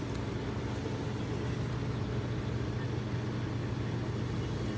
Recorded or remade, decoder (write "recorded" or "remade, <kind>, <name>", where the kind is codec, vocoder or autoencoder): recorded